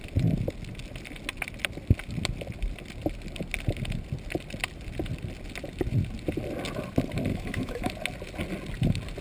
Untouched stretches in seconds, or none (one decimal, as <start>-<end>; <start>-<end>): 0.0-7.3; 7.9-9.2